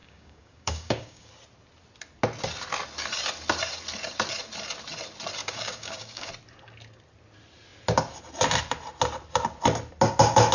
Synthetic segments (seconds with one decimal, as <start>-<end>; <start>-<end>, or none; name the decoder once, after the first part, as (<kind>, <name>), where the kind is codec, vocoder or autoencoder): 0.0-1.3 (codec, DAC); 5.4-6.3